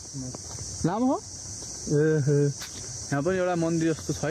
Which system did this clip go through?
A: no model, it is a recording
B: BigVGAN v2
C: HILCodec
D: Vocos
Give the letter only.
A